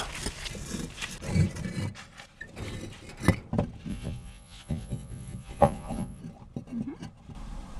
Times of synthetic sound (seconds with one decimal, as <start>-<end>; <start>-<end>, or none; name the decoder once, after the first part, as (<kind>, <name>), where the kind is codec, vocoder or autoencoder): 3.9-6.2 (vocoder, Vocos)